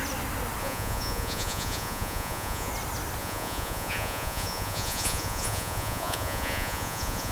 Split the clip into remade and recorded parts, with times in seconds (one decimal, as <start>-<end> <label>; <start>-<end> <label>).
0.0-0.6 recorded; 0.6-2.7 remade; 2.7-3.2 recorded; 3.2-7.3 remade